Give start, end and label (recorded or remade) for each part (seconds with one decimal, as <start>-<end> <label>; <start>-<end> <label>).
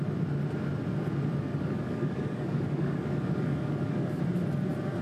0.0-1.5 recorded; 1.5-4.2 remade; 4.2-5.0 recorded